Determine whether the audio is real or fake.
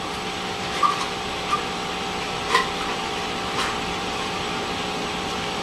fake